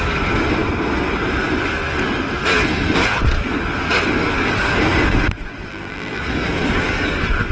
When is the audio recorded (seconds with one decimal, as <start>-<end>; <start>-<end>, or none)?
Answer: 0.0-5.7; 6.2-7.5